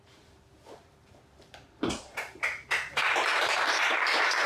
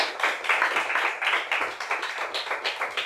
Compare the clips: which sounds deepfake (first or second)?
first